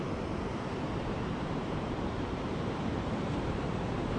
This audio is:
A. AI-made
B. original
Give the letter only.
A